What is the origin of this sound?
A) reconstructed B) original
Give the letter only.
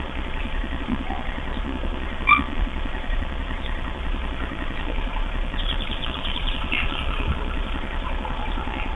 A